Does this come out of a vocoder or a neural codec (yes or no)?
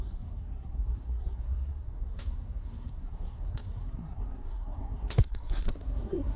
yes